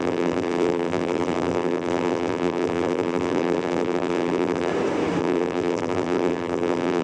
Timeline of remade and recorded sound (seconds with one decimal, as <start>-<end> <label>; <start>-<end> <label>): 0.0-4.7 remade; 4.7-5.2 recorded; 5.2-7.0 remade